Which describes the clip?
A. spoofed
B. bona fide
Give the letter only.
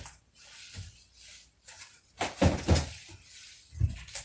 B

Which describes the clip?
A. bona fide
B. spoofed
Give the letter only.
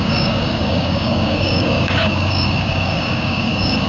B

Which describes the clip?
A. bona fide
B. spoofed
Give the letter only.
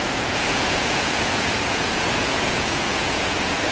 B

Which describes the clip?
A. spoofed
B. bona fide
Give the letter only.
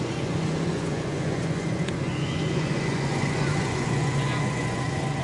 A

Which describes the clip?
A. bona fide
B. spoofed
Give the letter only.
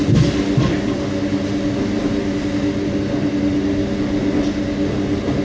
A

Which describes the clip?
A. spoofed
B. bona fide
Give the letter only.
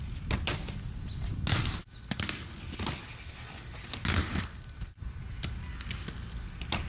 B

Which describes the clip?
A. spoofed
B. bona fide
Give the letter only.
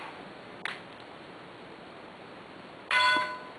B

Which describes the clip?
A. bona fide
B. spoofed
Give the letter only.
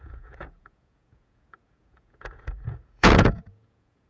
B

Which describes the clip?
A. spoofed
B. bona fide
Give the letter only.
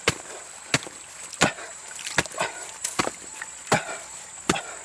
B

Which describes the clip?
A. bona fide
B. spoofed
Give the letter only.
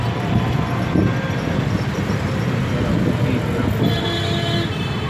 B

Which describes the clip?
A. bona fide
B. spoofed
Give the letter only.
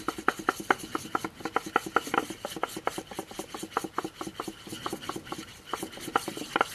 A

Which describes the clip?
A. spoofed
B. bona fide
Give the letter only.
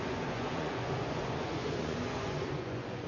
A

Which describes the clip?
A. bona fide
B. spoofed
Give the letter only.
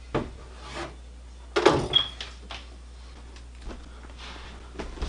A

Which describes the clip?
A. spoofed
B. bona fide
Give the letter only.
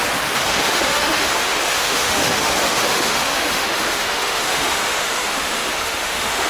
A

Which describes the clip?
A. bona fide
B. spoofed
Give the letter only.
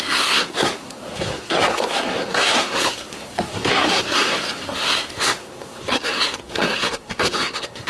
B